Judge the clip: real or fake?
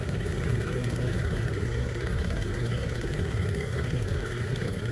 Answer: fake